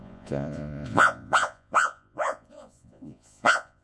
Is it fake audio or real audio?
fake